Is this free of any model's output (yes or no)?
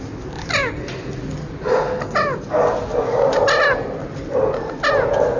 yes